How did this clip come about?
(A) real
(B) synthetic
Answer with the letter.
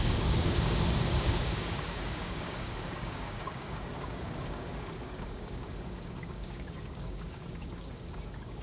B